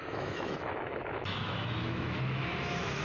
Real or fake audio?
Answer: fake